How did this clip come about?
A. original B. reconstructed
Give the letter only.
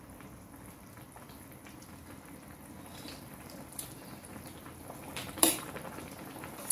B